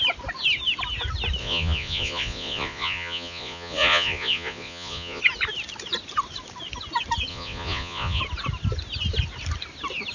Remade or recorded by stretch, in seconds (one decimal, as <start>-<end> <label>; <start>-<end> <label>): 0.0-1.4 recorded; 1.4-5.2 remade; 5.2-7.3 recorded; 7.3-8.2 remade; 8.2-10.1 recorded